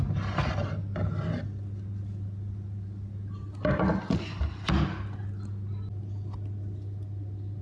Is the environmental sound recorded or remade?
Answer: recorded